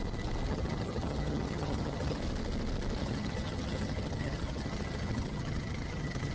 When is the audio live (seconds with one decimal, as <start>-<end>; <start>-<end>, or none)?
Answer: 0.0-0.5; 2.2-3.0